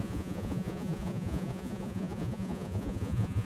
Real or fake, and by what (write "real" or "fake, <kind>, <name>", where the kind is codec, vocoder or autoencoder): fake, vocoder, Vocos